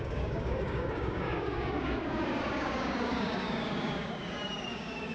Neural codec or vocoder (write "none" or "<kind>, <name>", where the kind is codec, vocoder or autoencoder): codec, DAC